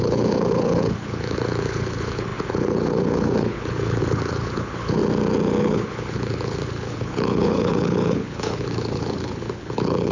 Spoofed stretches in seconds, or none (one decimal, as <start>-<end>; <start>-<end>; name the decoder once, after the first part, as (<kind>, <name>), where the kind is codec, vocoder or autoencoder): 0.0-5.0 (codec, HILCodec); 5.6-10.1